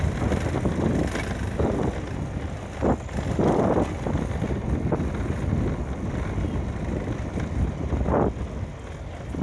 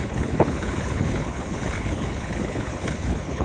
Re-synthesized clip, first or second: second